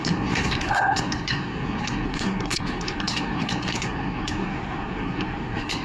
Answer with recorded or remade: remade